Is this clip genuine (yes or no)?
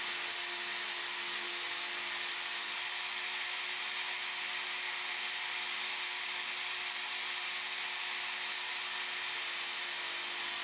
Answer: yes